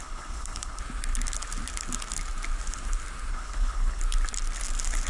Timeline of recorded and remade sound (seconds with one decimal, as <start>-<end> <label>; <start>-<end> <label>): 0.0-0.8 remade; 0.8-3.3 recorded; 3.3-4.0 remade; 4.0-5.1 recorded